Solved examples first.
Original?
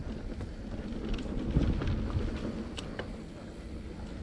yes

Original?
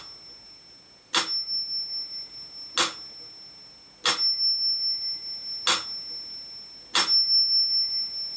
yes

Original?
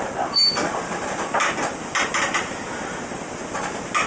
yes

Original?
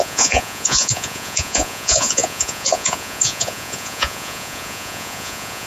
no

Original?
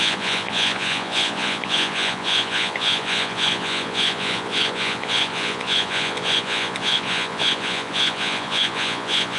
no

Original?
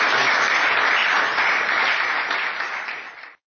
yes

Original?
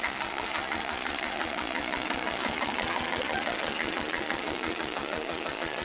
no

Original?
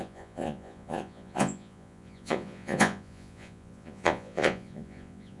no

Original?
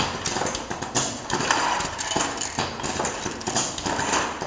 yes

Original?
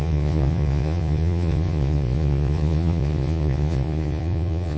no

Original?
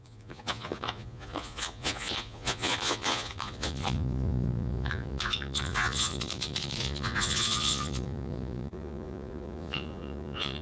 no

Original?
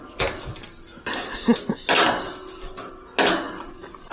yes